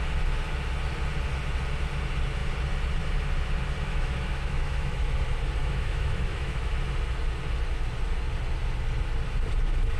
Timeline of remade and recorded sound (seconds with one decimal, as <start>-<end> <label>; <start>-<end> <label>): 0.0-3.9 recorded; 3.9-5.1 remade; 5.1-5.6 recorded; 5.6-6.7 remade; 6.7-10.0 recorded